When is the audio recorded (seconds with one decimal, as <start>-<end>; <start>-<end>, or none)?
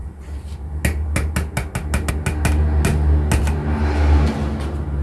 0.0-5.0